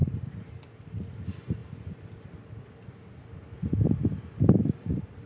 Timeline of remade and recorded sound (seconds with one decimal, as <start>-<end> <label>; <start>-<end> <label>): 0.0-5.3 recorded